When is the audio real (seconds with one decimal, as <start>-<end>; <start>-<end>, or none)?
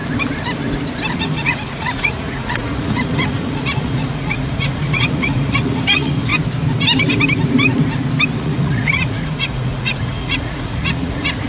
0.0-1.1; 6.3-8.4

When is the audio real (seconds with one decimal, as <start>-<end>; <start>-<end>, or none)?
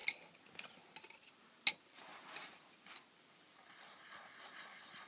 0.0-5.1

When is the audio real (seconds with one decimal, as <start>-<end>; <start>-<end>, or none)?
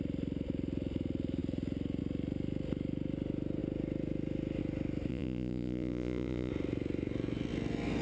0.0-5.1; 6.5-8.0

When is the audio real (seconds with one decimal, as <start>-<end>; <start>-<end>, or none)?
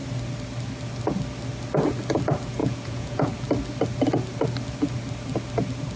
0.0-2.6; 3.3-6.0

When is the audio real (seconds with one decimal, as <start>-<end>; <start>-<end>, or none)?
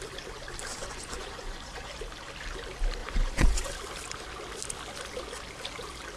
0.0-0.7; 1.9-3.0; 3.7-6.2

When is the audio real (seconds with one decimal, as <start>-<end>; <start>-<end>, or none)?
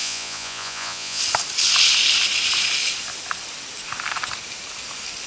1.2-5.3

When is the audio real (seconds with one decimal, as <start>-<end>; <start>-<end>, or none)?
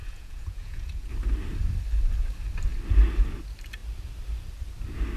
1.1-5.2